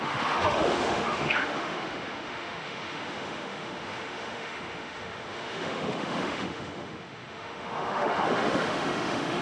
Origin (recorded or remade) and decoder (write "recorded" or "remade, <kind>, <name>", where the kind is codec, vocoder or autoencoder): remade, autoencoder, DAC-VAE